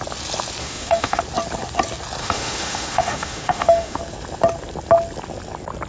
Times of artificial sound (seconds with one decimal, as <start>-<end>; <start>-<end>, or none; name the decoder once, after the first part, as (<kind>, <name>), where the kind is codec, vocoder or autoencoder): 0.6-1.2 (autoencoder, DAC-VAE); 2.2-4.0